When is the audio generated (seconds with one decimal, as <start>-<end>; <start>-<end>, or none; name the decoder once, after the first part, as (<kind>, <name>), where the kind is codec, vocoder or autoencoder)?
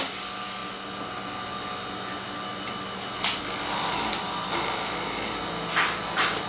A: none